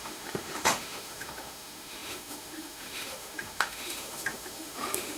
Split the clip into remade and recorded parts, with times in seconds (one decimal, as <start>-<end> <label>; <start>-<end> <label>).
0.0-5.2 remade